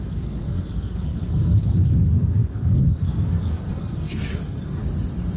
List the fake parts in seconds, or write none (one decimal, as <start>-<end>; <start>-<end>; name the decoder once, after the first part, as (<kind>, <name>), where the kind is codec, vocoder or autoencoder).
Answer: 0.0-4.8 (codec, SNAC)